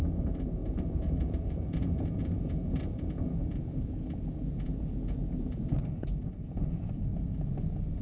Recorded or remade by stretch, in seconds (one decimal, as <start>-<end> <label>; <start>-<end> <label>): 0.0-7.1 remade; 7.1-8.0 recorded